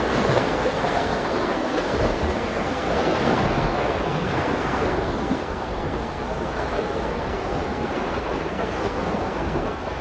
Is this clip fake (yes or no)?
yes